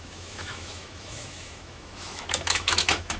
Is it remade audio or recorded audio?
remade